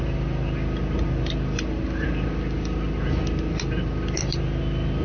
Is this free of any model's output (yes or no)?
yes